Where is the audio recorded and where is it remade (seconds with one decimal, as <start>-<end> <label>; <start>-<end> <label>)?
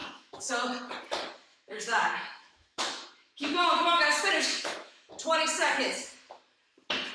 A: 0.0-0.5 remade; 0.5-1.5 recorded; 1.5-5.1 remade; 5.1-7.1 recorded